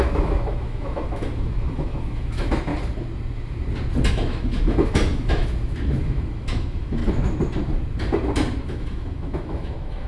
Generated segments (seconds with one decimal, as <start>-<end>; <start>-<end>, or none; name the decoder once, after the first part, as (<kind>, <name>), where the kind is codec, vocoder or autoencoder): 0.0-2.7 (autoencoder, DAC-VAE); 4.1-7.0; 8.6-10.1